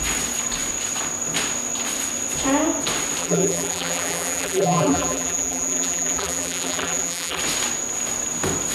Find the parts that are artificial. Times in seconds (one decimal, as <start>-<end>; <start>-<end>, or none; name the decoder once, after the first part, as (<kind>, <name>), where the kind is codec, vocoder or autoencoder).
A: 3.2-7.4 (vocoder, BigVGAN v2)